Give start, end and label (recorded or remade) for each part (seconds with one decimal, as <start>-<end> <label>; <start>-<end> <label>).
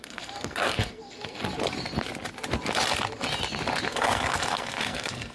0.0-1.4 remade; 1.4-3.9 recorded; 3.9-5.3 remade